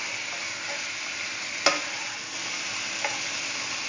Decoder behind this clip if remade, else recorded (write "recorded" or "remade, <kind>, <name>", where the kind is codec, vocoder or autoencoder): recorded